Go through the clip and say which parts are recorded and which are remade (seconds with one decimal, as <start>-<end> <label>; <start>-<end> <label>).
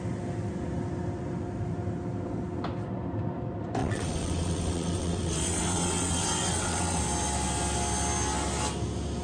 0.0-3.8 recorded; 3.8-7.0 remade; 7.0-9.2 recorded